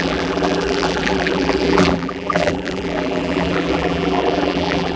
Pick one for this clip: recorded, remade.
remade